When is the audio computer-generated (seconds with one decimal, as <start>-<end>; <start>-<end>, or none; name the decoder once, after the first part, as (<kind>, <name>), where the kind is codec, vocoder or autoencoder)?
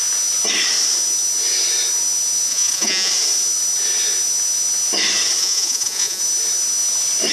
2.5-3.1 (vocoder, Vocos); 5.4-6.2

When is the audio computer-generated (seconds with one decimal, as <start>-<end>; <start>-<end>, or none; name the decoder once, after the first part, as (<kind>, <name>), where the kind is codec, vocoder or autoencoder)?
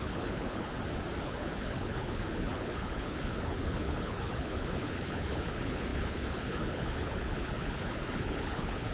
0.0-0.7 (codec, HILCodec); 1.2-8.9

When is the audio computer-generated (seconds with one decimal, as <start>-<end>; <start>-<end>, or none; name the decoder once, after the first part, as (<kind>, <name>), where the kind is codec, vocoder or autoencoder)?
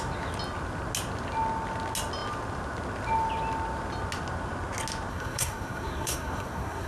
5.1-6.9 (codec, SNAC)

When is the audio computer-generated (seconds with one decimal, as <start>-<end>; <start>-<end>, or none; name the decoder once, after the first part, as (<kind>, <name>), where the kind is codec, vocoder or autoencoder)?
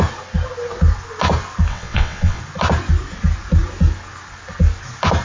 1.7-2.4 (vocoder, WaveNeXt)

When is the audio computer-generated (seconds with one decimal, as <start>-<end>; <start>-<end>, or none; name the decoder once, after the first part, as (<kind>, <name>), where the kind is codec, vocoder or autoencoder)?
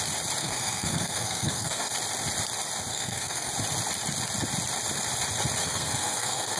0.4-1.9 (codec, SNAC); 2.9-3.5; 5.6-6.6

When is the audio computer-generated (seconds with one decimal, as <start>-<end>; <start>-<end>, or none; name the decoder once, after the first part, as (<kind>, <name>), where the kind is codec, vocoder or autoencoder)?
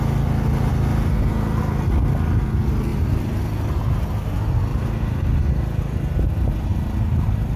4.7-5.5 (vocoder, BigVGAN v2); 6.7-7.6